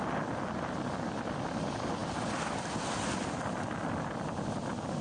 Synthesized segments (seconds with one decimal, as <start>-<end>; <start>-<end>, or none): none